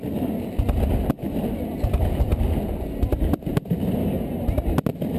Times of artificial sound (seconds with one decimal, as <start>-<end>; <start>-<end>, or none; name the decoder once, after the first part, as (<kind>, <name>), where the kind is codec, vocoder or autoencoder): none